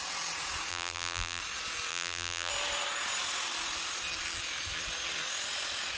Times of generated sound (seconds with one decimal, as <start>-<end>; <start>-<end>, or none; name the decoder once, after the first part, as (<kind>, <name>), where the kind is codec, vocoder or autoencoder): 0.7-1.4 (vocoder, BigVGAN v2); 1.9-2.5